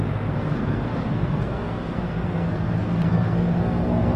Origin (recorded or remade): remade